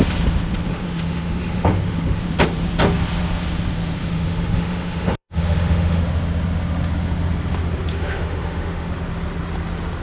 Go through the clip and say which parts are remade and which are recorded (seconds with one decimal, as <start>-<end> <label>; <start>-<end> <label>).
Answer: 0.0-0.7 recorded; 0.7-2.2 remade; 2.2-4.0 recorded; 4.0-6.0 remade; 6.0-7.9 recorded; 7.9-8.9 remade; 8.9-10.0 recorded